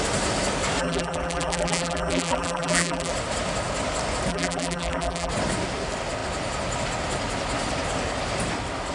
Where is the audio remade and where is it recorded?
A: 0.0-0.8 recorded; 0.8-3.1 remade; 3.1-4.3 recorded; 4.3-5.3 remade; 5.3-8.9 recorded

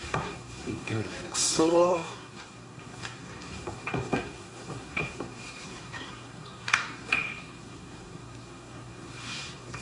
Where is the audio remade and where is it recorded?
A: 0.0-9.8 remade

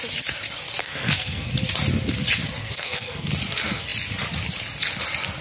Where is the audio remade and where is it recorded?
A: 0.0-0.8 recorded; 0.8-1.5 remade; 1.5-2.6 recorded; 2.6-3.3 remade; 3.3-5.4 recorded

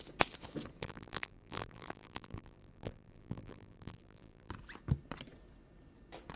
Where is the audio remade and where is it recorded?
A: 0.0-0.8 recorded; 0.8-4.5 remade; 4.5-6.4 recorded